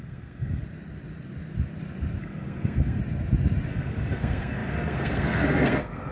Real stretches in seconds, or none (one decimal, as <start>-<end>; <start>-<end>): 0.6-2.2; 3.0-3.7